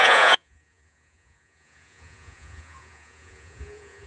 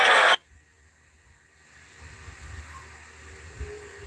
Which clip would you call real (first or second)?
second